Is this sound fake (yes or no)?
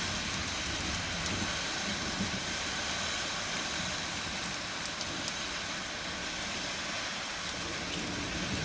no